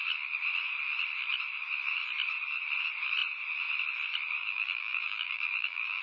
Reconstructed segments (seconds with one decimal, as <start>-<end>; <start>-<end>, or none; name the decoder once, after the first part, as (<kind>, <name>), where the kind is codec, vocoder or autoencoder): 4.4-6.0 (vocoder, BigVGAN v2)